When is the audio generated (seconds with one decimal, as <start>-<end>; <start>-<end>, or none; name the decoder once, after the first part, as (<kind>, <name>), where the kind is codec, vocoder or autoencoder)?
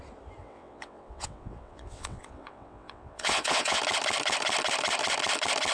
0.4-3.8 (vocoder, WaveNeXt)